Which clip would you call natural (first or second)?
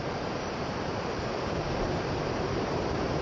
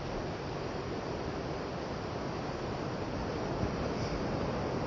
second